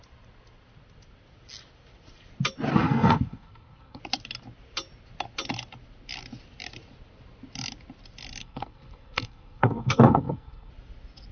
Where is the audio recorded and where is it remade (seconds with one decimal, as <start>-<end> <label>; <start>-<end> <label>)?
0.0-2.7 recorded; 2.7-4.0 remade; 4.0-8.4 recorded; 8.4-10.7 remade; 10.7-11.3 recorded